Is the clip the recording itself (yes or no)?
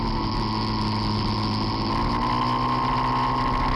yes